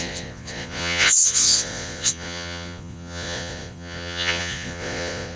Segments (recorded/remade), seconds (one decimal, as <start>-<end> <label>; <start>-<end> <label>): 0.0-5.4 remade